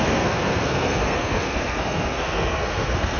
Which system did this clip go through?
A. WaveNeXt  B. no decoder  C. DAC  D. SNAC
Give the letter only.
D